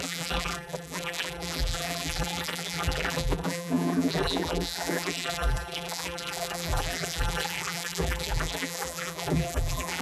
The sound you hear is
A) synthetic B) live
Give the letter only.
A